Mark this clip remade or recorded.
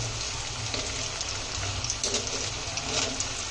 recorded